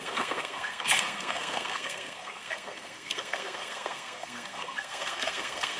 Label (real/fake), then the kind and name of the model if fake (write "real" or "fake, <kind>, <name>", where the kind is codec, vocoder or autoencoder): fake, codec, SNAC